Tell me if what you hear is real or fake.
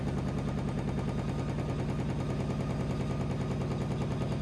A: real